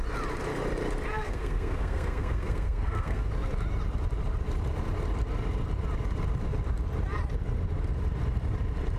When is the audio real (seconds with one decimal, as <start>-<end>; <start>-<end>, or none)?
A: 0.0-1.1; 3.3-9.0